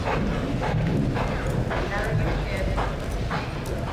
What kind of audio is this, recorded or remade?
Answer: recorded